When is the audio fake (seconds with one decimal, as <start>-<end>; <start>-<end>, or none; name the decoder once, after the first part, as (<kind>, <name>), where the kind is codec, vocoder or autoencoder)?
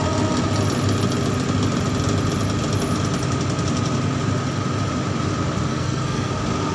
5.7-6.3 (codec, SNAC)